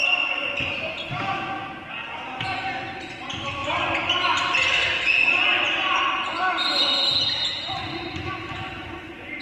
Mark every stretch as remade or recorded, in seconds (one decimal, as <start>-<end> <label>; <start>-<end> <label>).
0.0-3.6 recorded; 3.6-4.6 remade; 4.6-7.5 recorded; 7.5-9.4 remade